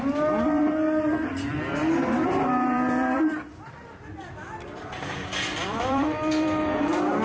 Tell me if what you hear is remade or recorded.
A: remade